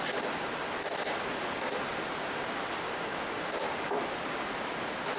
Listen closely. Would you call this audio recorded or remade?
recorded